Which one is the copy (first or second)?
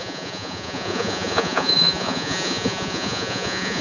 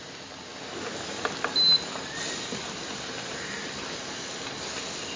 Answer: first